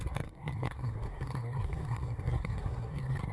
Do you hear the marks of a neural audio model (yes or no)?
yes